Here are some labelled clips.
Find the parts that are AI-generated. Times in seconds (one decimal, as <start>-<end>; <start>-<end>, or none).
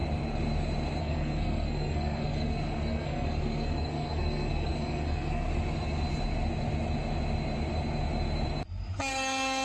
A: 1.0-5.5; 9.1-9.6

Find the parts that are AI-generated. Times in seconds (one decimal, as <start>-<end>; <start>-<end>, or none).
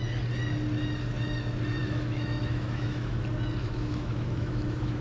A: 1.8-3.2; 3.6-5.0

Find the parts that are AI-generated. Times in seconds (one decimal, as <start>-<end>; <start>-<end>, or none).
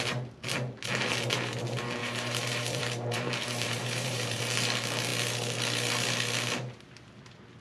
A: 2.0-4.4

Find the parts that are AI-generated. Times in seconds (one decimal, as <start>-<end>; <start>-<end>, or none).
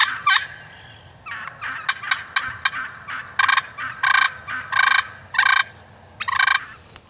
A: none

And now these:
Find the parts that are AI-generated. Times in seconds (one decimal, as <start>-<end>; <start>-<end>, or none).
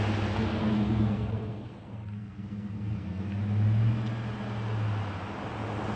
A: 0.6-3.4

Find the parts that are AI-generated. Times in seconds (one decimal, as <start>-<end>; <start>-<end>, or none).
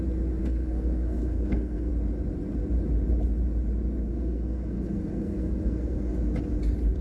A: 0.4-1.9; 4.0-6.2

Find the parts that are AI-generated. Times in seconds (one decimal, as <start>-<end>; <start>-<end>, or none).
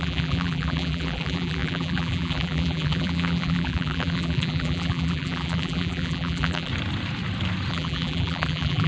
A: 0.0-6.7; 7.7-8.9